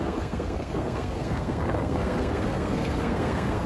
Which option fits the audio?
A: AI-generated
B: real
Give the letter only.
A